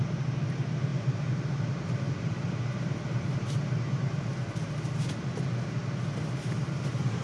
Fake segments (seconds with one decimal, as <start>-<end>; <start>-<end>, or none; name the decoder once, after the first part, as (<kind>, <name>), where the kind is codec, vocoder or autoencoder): 0.0-4.3 (vocoder, BigVGAN v2); 5.2-5.8; 6.6-7.2